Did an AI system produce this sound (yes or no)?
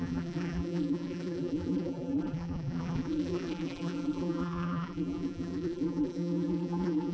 yes